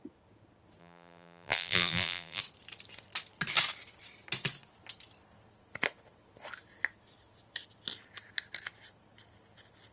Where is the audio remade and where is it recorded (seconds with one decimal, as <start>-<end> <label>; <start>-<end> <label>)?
0.0-0.8 recorded; 0.8-2.4 remade; 2.4-9.9 recorded